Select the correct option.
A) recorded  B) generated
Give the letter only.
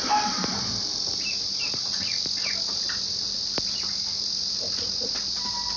A